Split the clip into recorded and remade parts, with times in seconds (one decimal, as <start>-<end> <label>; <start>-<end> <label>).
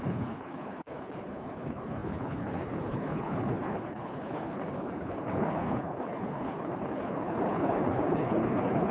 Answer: 0.0-8.9 remade